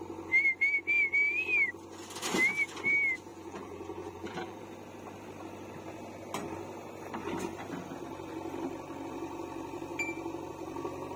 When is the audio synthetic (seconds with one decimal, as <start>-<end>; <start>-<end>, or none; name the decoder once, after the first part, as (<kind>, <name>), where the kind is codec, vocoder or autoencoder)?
3.3-4.6 (vocoder, BigVGAN v2)